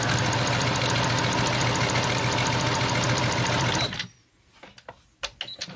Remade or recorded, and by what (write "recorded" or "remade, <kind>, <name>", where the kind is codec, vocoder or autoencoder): recorded